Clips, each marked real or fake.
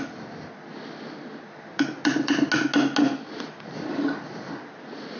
real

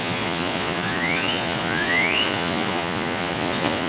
fake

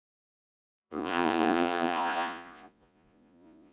fake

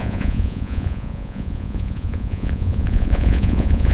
fake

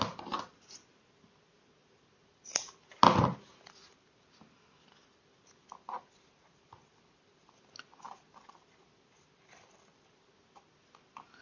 real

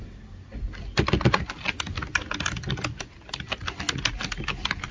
real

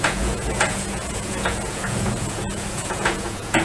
fake